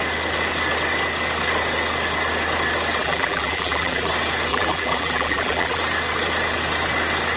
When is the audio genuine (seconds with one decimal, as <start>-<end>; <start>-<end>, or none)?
0.0-3.0; 4.1-4.5; 5.8-7.4